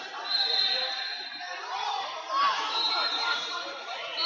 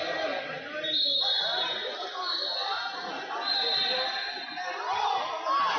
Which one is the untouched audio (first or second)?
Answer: second